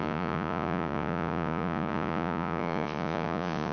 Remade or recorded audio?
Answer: remade